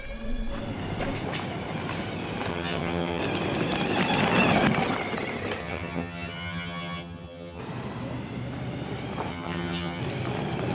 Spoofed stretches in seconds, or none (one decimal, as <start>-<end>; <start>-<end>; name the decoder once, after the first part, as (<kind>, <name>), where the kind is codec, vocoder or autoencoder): 2.5-3.2 (vocoder, HiFi-GAN); 5.6-7.6; 9.3-10.0